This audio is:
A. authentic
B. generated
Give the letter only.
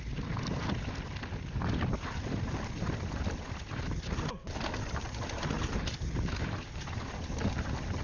A